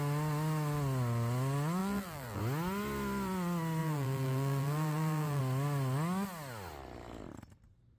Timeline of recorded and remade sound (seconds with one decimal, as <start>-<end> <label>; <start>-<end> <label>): 0.0-1.8 recorded; 1.8-2.4 remade; 2.4-3.8 recorded; 3.8-5.4 remade; 5.4-8.0 recorded